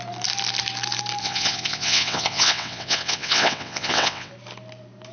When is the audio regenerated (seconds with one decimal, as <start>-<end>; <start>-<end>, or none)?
1.2-4.3